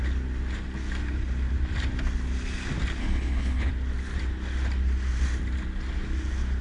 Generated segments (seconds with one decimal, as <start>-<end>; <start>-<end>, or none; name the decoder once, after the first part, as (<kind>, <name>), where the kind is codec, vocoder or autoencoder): 3.0-3.7 (codec, HILCodec)